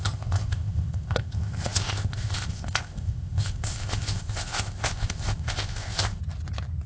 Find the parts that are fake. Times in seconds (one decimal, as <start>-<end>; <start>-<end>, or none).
0.0-6.2